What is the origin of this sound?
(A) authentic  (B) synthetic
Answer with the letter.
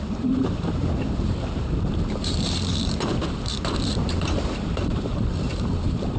B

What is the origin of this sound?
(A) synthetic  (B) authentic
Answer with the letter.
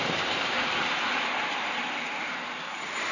A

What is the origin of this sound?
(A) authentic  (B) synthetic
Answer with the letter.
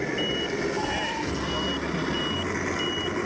A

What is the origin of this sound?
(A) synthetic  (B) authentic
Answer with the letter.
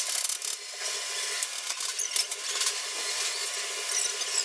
B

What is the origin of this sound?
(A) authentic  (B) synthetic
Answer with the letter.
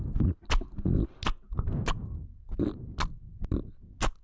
A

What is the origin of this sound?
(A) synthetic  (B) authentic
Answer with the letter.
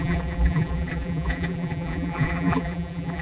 A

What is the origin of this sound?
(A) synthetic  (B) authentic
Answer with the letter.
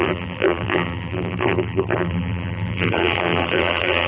A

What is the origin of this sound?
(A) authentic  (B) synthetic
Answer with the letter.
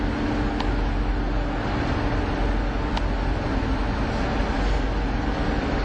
A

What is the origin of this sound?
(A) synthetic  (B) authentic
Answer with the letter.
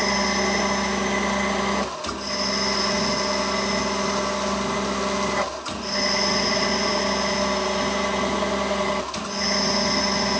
B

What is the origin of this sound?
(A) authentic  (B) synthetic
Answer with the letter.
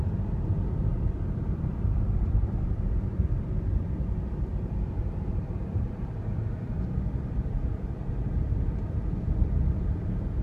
B